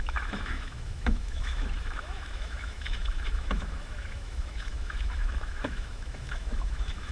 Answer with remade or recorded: remade